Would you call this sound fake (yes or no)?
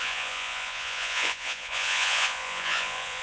yes